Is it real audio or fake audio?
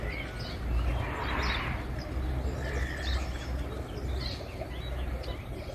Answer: real